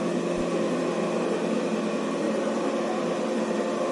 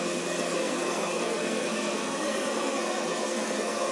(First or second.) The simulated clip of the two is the second